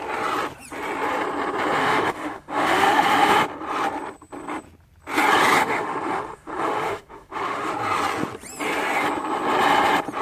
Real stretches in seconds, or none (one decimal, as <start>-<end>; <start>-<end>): 0.0-1.8; 3.4-5.6; 7.7-10.2

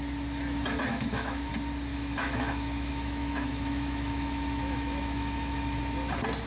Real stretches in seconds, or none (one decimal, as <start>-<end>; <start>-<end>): 0.0-0.9; 1.5-1.9; 5.8-6.5

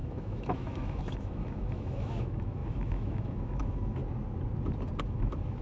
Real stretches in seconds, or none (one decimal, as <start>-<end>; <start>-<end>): 4.0-5.0

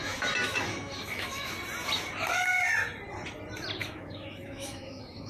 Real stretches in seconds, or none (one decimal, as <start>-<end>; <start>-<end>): 1.5-3.8